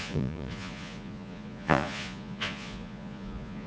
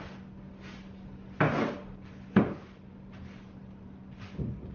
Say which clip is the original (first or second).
second